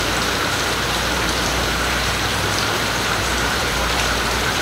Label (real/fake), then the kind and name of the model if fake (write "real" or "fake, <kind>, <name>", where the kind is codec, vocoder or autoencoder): fake, vocoder, BigVGAN v2